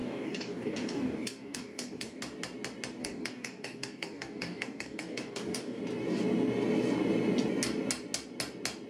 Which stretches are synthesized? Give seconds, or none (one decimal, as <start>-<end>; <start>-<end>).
0.0-2.2; 3.0-5.8